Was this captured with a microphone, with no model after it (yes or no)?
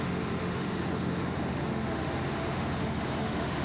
no